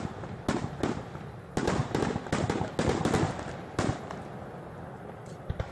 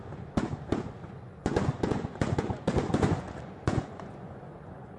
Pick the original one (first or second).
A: first